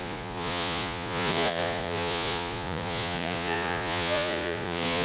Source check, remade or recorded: remade